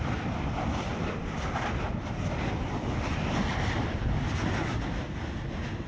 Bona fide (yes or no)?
yes